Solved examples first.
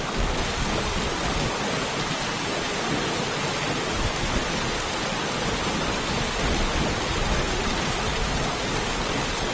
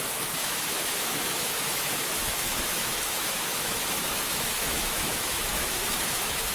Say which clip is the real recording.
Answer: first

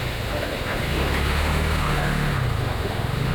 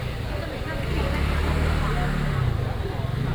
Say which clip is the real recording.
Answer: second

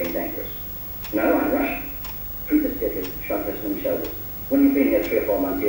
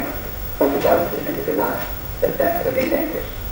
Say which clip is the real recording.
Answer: first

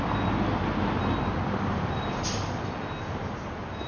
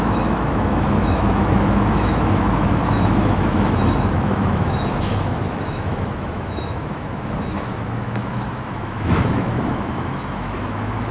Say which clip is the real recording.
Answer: first